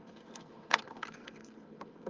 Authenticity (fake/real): fake